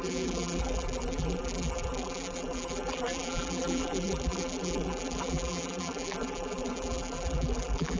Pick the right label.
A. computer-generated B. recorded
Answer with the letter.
A